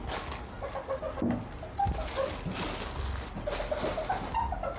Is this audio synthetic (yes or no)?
no